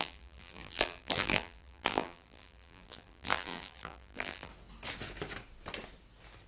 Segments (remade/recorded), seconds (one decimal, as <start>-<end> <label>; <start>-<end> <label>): 0.0-4.5 remade; 4.5-6.5 recorded